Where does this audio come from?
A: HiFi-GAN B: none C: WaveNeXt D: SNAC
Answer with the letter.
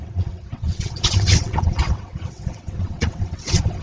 C